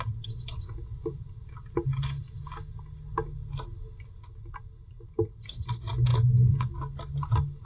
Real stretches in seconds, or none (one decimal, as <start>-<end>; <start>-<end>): 0.0-6.1; 6.7-7.7